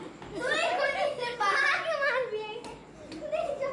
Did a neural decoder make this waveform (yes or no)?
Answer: no